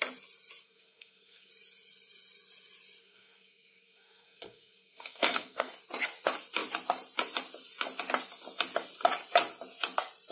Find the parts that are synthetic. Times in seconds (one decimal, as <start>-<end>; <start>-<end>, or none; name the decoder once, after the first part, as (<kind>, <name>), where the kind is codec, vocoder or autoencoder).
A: 0.6-1.5 (codec, SNAC); 3.0-5.7